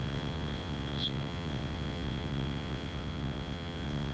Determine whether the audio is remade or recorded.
remade